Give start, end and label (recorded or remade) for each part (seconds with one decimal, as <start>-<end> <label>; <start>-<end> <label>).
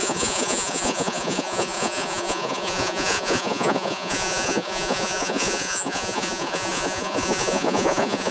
0.0-8.3 remade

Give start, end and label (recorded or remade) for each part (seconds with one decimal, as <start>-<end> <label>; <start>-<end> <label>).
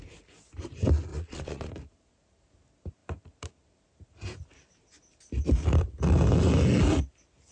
0.0-1.1 recorded; 1.1-1.7 remade; 1.7-7.5 recorded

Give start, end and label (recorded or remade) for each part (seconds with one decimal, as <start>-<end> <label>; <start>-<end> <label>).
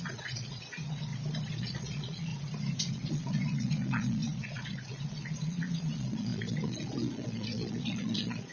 0.0-1.1 remade; 1.1-1.6 recorded; 1.6-2.3 remade; 2.3-2.9 recorded; 2.9-8.5 remade